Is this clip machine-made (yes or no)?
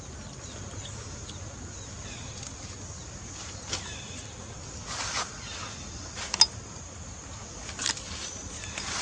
no